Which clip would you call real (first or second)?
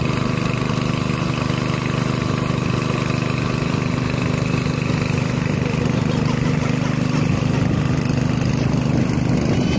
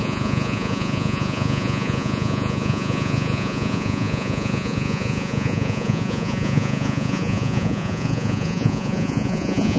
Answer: first